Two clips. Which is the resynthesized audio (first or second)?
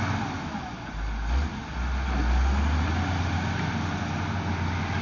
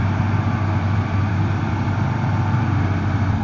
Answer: second